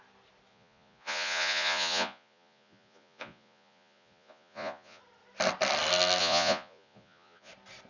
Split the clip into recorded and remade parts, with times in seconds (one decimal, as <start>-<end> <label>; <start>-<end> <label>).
0.0-0.5 recorded; 0.5-5.0 remade; 5.0-6.2 recorded; 6.2-7.5 remade; 7.5-7.9 recorded